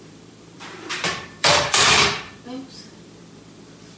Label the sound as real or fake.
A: fake